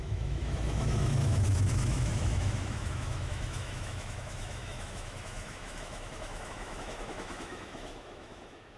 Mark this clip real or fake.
fake